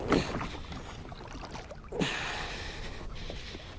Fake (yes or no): no